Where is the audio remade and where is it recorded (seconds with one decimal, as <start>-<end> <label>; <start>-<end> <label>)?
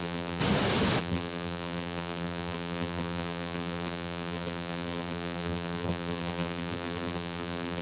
0.0-0.4 remade; 0.4-1.0 recorded; 1.0-7.8 remade